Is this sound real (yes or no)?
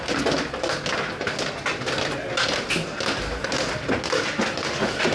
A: yes